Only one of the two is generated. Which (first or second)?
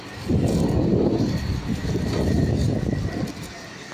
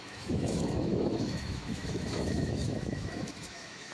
second